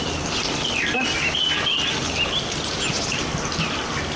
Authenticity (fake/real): real